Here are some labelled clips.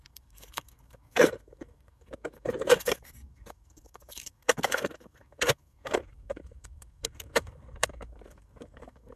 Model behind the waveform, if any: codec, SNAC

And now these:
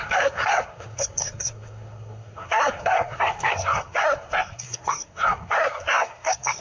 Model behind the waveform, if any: codec, SNAC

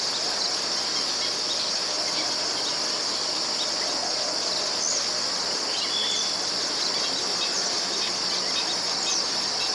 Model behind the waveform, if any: none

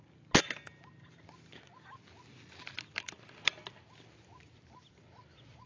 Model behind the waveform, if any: none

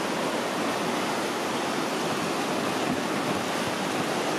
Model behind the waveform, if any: none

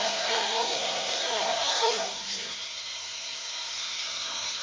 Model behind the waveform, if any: codec, SNAC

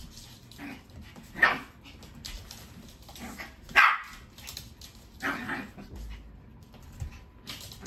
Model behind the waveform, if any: none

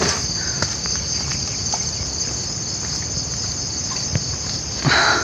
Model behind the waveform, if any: none